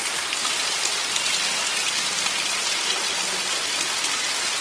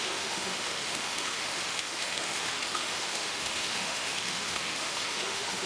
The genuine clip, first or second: first